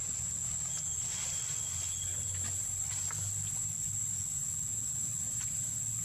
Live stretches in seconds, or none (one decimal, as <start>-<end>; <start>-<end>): 0.0-2.1; 4.5-6.0